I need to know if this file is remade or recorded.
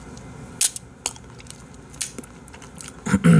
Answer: recorded